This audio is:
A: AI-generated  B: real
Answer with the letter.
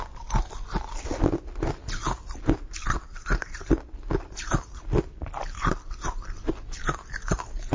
B